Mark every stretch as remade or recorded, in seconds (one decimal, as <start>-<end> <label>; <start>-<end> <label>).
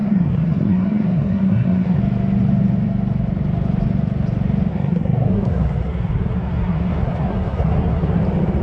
0.0-2.0 remade; 2.0-4.7 recorded; 4.7-8.2 remade; 8.2-8.6 recorded